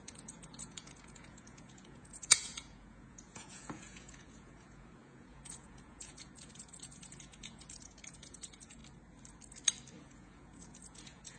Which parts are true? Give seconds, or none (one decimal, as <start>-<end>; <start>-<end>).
8.8-10.0